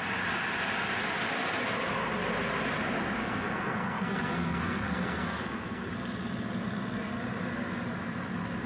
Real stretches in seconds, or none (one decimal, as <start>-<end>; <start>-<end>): 0.0-3.2; 5.9-8.7